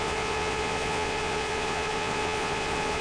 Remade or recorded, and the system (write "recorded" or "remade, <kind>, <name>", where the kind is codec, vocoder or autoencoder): remade, vocoder, Vocos